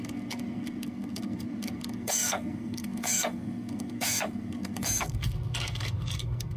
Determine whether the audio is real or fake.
fake